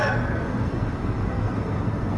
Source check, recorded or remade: remade